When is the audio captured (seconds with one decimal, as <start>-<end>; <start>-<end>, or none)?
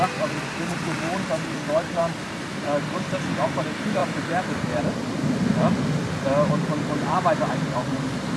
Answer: 0.0-2.0; 3.2-8.4